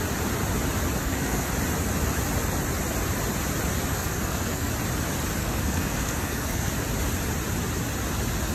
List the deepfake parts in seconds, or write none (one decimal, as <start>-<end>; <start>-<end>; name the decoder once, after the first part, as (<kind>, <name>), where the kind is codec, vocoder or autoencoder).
1.0-1.5 (codec, SNAC); 3.9-4.7; 5.4-6.7